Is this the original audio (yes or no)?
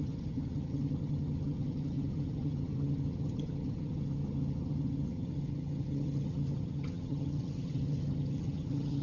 no